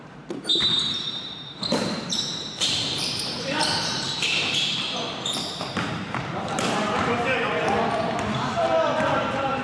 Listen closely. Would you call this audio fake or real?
fake